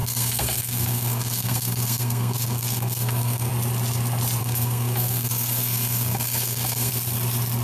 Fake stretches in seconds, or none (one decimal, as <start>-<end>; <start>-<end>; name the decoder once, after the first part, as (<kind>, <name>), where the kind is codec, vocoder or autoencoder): 0.0-3.5 (codec, SNAC); 4.4-6.9